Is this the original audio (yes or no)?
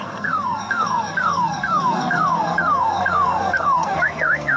no